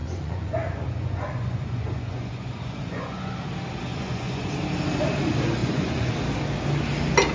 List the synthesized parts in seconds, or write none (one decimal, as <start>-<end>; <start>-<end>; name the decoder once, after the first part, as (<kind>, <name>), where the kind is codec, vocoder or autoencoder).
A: 0.0-3.3 (vocoder, Vocos); 3.9-4.5; 5.6-6.1